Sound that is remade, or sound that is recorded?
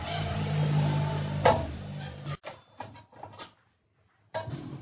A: recorded